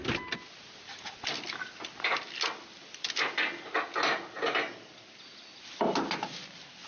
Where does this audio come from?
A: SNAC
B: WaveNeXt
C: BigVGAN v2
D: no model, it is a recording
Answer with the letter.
D